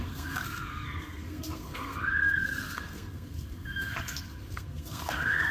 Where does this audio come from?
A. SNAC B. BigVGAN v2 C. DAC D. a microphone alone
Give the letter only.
A